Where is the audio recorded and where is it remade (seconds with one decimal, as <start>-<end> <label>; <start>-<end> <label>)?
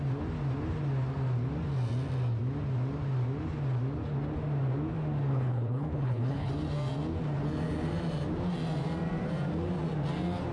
0.0-5.3 recorded; 5.3-6.5 remade; 6.5-10.5 recorded